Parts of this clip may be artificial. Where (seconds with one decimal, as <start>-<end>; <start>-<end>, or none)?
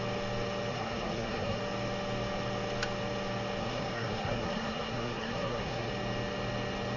0.7-1.6; 3.6-5.9